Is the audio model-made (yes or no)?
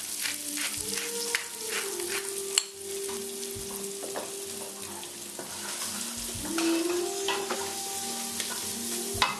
no